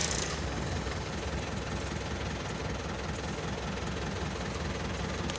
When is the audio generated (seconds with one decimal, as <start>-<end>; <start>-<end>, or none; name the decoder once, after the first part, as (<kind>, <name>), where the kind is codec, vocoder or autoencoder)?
0.0-1.1 (codec, DAC)